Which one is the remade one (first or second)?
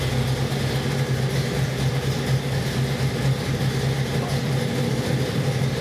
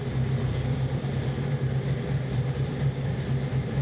second